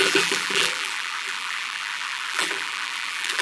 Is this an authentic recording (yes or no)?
no